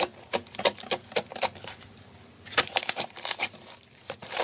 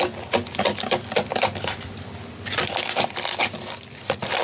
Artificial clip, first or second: first